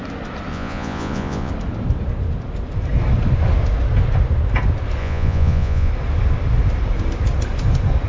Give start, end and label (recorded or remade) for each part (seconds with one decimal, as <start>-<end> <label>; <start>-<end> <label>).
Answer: 0.0-0.5 recorded; 0.5-1.5 remade; 1.5-5.0 recorded; 5.0-5.9 remade; 5.9-8.1 recorded